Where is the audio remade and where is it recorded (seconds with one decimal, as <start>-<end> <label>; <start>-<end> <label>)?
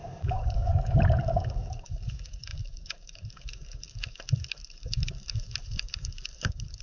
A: 0.0-0.7 remade; 0.7-1.2 recorded; 1.2-6.8 remade